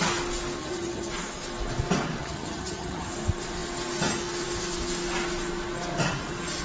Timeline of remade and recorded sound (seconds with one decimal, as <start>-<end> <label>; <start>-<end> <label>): 0.0-0.6 recorded; 0.6-1.1 remade; 1.1-2.2 recorded; 2.2-3.1 remade; 3.1-6.6 recorded